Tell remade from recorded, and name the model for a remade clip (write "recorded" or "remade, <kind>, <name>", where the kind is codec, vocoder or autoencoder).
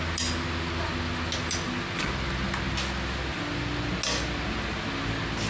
recorded